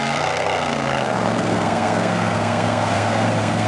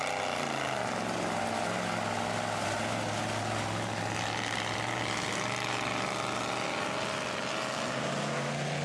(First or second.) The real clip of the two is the second